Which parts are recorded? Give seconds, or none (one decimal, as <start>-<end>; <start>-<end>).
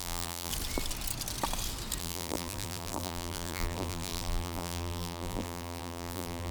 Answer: 0.5-2.0